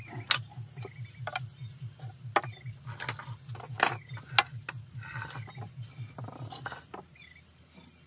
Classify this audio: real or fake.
real